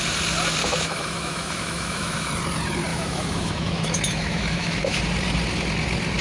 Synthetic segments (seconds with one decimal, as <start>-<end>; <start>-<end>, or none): 0.6-2.3; 2.9-5.0